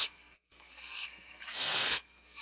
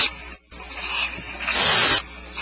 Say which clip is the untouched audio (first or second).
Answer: second